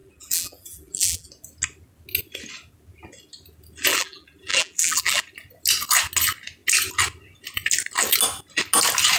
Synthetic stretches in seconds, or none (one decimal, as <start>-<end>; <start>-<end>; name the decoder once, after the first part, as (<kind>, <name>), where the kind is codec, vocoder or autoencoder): 0.0-1.3 (vocoder, BigVGAN v2); 3.9-5.2

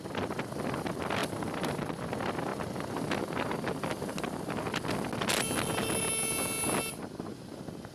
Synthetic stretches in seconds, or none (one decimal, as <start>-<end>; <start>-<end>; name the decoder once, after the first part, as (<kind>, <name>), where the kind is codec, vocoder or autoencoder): 1.2-2.1 (vocoder, BigVGAN v2)